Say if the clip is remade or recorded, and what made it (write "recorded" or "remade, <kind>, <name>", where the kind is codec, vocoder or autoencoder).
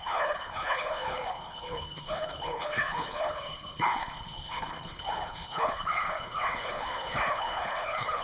remade, codec, HILCodec